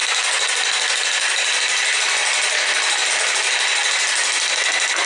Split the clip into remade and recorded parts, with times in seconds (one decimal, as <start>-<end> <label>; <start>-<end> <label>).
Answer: 0.0-5.1 recorded